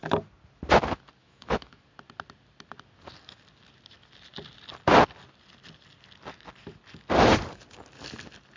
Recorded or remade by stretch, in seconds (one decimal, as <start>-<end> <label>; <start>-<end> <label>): 0.0-1.2 recorded; 1.2-1.8 remade; 1.8-8.6 recorded